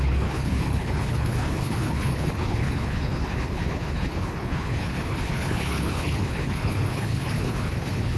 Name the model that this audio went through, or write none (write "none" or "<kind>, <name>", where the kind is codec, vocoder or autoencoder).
codec, HILCodec